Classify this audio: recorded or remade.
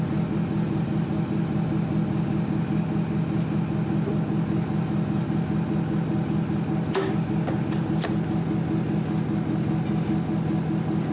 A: recorded